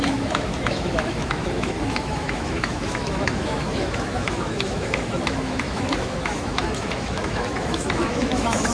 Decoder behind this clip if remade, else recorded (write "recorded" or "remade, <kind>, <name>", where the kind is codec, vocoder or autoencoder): remade, autoencoder, DAC-VAE